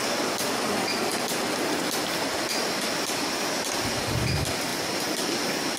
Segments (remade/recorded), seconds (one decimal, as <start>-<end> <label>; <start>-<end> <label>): 0.0-5.8 recorded